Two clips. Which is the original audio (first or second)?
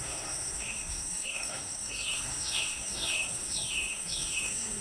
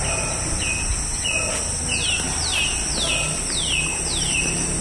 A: second